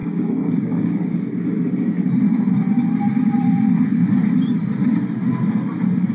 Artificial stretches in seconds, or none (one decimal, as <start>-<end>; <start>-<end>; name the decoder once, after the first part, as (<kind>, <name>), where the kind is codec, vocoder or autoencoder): 0.0-1.0 (codec, DAC)